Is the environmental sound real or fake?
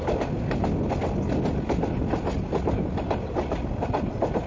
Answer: real